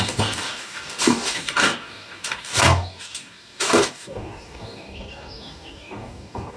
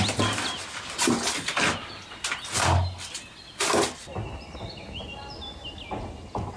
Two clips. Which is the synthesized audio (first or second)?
first